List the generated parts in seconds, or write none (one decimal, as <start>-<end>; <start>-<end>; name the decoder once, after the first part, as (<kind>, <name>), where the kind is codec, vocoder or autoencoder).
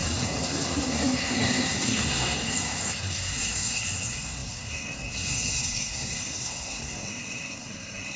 0.0-8.2 (codec, SNAC)